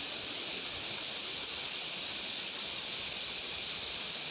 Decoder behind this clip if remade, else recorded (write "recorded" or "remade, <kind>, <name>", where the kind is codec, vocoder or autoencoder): recorded